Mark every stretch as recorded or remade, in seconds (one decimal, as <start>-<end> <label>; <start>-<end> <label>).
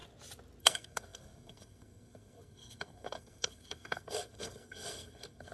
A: 0.0-0.6 recorded; 0.6-5.5 remade